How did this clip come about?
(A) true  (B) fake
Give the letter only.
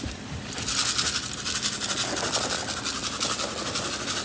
A